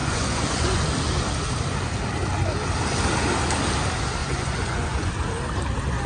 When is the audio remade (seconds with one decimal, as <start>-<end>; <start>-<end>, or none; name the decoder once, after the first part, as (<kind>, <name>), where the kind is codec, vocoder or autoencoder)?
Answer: 0.0-0.8 (vocoder, Vocos); 4.2-5.1